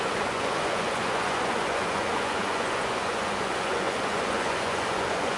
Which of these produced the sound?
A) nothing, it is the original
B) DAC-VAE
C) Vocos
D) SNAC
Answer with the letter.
C